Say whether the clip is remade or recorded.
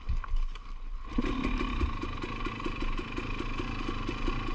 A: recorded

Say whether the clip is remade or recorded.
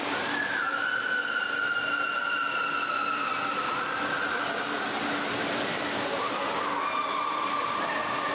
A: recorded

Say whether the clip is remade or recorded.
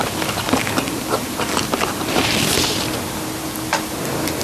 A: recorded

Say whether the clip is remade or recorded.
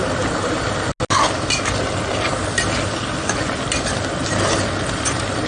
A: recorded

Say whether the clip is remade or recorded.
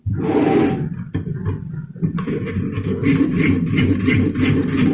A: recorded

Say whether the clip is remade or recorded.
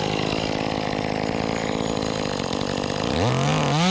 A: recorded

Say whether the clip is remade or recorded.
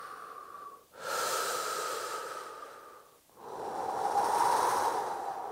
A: recorded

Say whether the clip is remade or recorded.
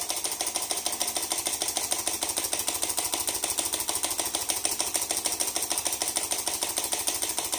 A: recorded